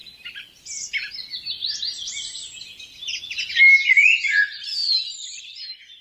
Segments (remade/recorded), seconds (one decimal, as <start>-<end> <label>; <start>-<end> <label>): 0.0-6.0 recorded